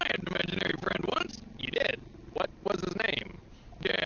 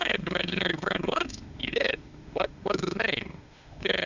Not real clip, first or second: second